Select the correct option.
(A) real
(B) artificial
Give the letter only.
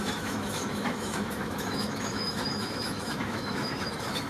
B